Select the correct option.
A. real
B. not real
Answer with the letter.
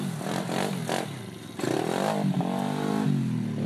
A